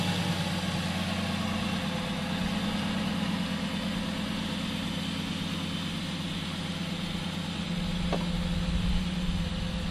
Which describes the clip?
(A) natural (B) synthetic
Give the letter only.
A